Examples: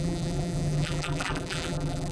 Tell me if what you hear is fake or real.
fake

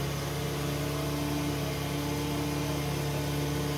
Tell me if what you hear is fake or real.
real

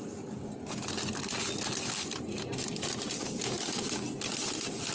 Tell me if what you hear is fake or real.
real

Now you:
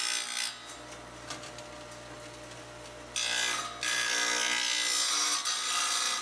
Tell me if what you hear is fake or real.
real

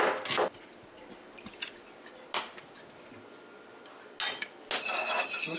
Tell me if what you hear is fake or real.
real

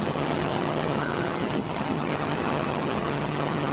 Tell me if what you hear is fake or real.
fake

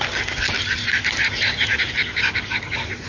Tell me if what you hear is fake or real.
real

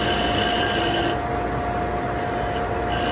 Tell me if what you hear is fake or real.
real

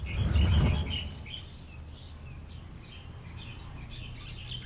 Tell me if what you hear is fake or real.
real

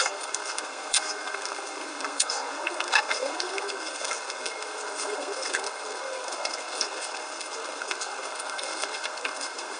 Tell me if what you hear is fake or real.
fake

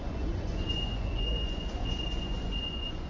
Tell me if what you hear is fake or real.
fake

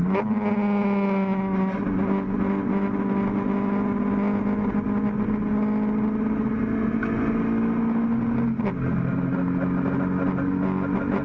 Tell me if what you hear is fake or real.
real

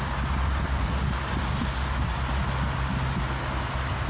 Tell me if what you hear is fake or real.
real